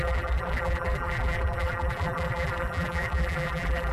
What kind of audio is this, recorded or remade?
remade